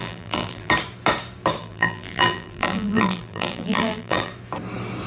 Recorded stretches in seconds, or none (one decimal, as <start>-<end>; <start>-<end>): 0.7-1.6; 4.3-5.1